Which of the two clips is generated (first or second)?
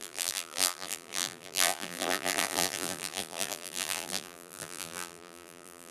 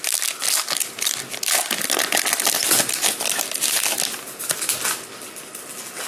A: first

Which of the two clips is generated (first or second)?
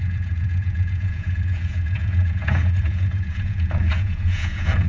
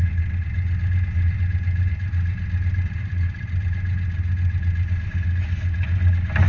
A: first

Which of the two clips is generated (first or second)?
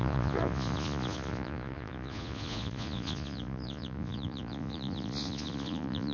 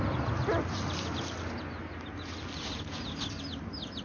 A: first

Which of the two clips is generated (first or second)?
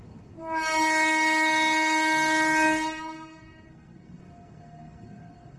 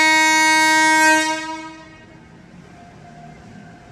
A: first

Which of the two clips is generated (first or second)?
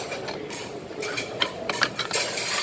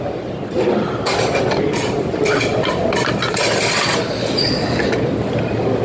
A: first